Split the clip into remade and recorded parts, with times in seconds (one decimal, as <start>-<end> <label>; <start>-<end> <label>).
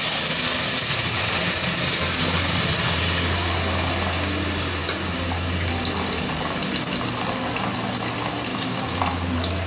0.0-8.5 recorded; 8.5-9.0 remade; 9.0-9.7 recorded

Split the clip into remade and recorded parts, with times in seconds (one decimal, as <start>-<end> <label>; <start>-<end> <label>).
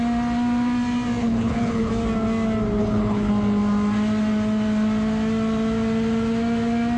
0.0-1.2 recorded; 1.2-1.9 remade; 1.9-2.8 recorded; 2.8-3.3 remade; 3.3-7.0 recorded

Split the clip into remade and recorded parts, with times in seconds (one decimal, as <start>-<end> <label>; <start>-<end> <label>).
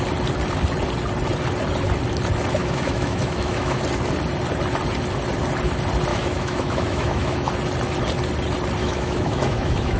0.0-2.6 recorded; 2.6-3.8 remade; 3.8-6.1 recorded; 6.1-7.5 remade; 7.5-8.8 recorded; 8.8-10.0 remade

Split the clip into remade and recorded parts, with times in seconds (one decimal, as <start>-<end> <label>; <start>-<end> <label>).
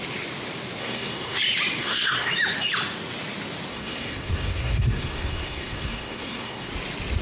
0.0-0.8 recorded; 0.8-1.4 remade; 1.4-1.8 recorded; 1.8-2.3 remade; 2.3-3.7 recorded; 3.7-6.7 remade; 6.7-7.2 recorded